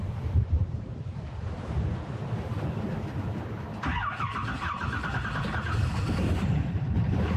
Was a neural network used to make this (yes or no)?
yes